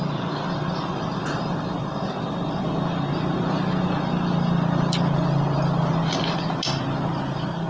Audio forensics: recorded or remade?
recorded